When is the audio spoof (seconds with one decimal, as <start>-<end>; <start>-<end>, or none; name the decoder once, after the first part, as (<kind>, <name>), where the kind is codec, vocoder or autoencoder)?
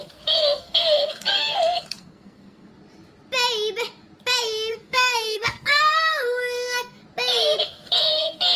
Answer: 0.0-2.7 (codec, SNAC); 4.7-7.0; 7.6-8.6